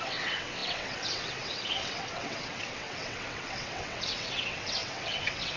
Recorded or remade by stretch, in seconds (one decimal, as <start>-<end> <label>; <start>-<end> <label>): 0.0-5.6 remade